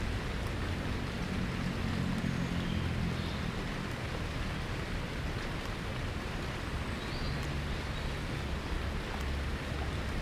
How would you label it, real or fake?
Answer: real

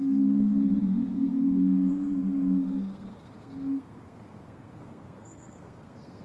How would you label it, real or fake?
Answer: fake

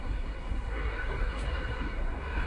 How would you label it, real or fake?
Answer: fake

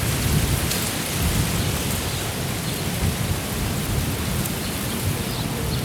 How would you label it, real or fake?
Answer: real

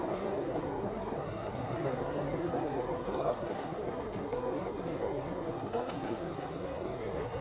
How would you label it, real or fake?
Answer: fake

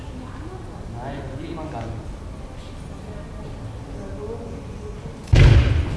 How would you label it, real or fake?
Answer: real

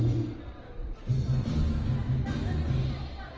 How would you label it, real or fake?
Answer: real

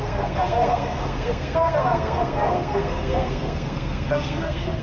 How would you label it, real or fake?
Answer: fake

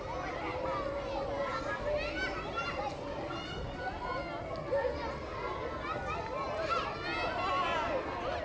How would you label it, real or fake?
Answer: real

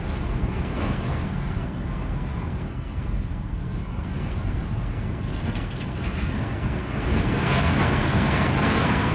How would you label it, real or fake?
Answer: fake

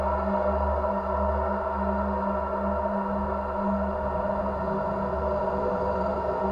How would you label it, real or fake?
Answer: real